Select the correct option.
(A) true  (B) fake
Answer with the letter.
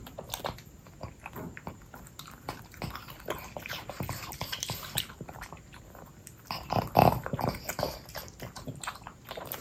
A